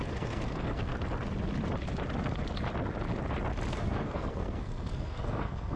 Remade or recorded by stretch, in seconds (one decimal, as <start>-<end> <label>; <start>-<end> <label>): 0.0-0.9 remade; 0.9-3.7 recorded; 3.7-5.8 remade